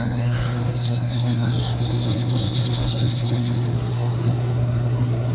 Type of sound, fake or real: fake